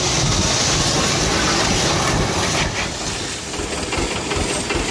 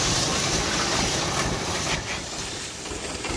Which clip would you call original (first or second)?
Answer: first